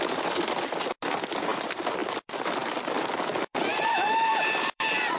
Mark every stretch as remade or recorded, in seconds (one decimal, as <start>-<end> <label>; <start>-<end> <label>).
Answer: 0.0-2.0 recorded; 2.0-5.2 remade

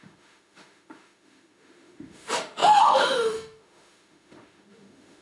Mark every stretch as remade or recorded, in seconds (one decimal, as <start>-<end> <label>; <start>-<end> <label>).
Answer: 0.0-5.2 remade

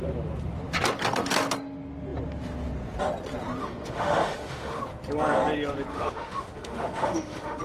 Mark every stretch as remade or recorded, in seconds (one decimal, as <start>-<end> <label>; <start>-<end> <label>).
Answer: 0.0-3.6 recorded; 3.6-4.8 remade; 4.8-5.9 recorded; 5.9-7.6 remade

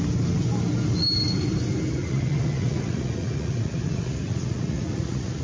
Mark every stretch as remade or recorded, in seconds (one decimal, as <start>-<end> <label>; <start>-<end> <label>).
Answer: 0.0-2.0 recorded; 2.0-5.4 remade

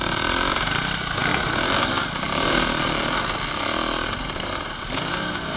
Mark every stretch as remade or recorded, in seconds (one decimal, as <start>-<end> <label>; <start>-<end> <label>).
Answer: 0.0-5.6 recorded

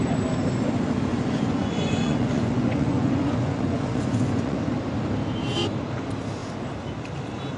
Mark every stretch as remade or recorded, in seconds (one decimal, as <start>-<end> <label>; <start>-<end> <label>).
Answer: 0.0-1.1 recorded; 1.1-4.6 remade; 4.6-7.6 recorded

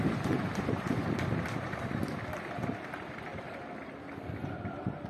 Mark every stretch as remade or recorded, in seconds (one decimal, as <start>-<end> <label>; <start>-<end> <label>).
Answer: 0.0-1.0 remade; 1.0-2.8 recorded; 2.8-3.3 remade; 3.3-5.1 recorded

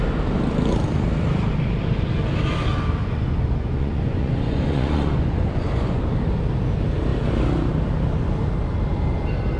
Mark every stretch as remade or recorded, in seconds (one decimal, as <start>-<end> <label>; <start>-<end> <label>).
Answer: 0.0-3.0 recorded; 3.0-6.0 remade; 6.0-9.6 recorded